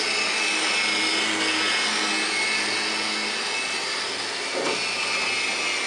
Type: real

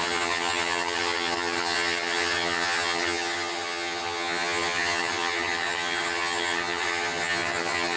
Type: fake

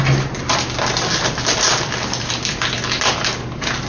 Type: real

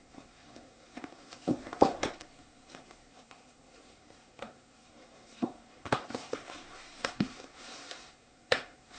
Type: fake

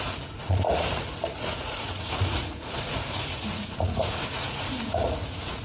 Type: fake